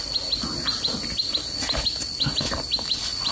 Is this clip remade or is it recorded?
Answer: recorded